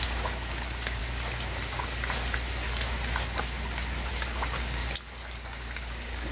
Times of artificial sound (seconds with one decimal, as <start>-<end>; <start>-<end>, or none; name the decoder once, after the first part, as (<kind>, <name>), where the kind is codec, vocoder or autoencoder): 0.0-1.0 (codec, DAC); 4.1-4.8; 5.3-6.3